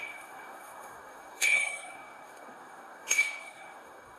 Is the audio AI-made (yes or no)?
yes